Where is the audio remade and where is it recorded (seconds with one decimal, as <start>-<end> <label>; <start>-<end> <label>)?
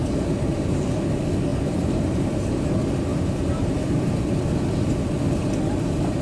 0.0-0.9 remade; 0.9-1.5 recorded; 1.5-2.5 remade; 2.5-3.1 recorded; 3.1-4.3 remade; 4.3-6.2 recorded